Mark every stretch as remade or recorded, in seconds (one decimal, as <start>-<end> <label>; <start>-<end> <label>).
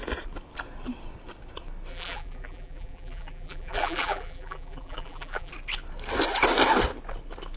0.0-1.9 recorded; 1.9-5.5 remade; 5.5-7.6 recorded